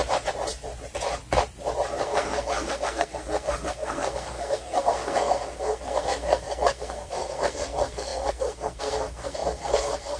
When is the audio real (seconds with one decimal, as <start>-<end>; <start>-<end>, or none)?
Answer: 0.0-2.0